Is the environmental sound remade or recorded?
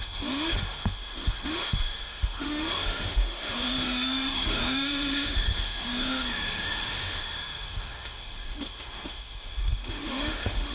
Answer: remade